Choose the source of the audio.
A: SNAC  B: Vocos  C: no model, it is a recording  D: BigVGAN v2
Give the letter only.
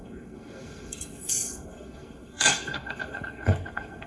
A